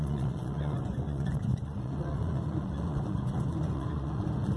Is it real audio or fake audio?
fake